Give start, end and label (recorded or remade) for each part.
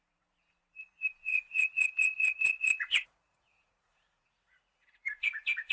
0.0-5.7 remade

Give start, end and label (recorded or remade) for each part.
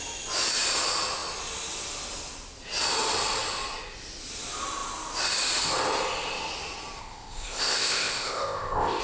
0.0-7.0 recorded; 7.0-9.0 remade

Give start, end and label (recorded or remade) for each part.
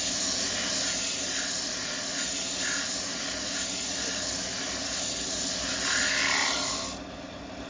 0.0-7.7 recorded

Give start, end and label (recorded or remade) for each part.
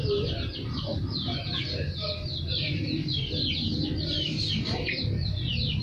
0.0-5.8 recorded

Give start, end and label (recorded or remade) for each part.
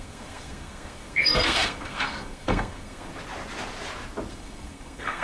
0.0-3.1 remade; 3.1-4.3 recorded; 4.3-5.2 remade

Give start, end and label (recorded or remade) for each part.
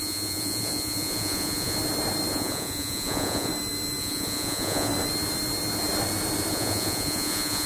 0.0-1.8 remade; 1.8-2.3 recorded; 2.3-3.5 remade; 3.5-4.0 recorded; 4.0-4.9 remade; 4.9-6.5 recorded; 6.5-7.7 remade